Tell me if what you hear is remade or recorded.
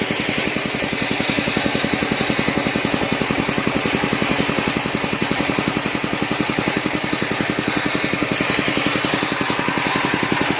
recorded